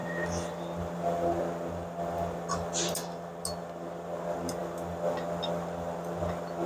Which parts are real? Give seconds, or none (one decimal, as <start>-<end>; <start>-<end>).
0.0-6.7